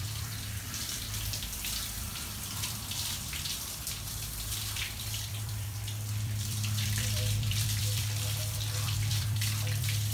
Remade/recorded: remade